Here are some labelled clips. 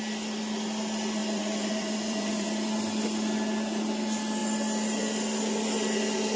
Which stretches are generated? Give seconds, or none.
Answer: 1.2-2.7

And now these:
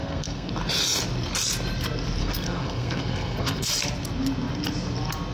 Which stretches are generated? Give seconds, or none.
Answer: 0.0-0.5; 2.2-3.7

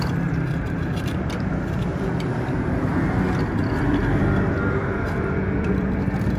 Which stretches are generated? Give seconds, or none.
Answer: 0.0-2.9; 3.5-6.4

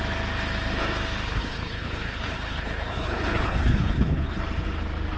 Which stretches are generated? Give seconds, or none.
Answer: 1.3-4.4

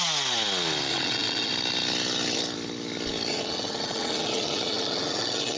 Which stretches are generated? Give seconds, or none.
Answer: 0.9-1.5; 3.3-5.6